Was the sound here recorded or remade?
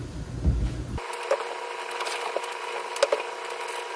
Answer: recorded